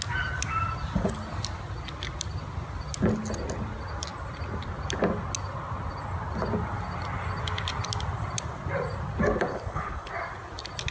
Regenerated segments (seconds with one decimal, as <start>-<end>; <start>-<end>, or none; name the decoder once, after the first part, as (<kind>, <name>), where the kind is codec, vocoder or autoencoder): 9.5-10.1 (codec, HILCodec)